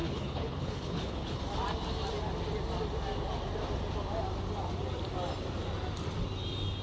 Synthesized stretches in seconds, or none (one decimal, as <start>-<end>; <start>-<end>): 0.0-1.4